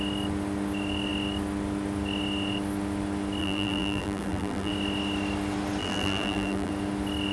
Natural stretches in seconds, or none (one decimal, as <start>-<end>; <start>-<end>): 0.0-3.4; 4.7-5.8; 6.7-7.3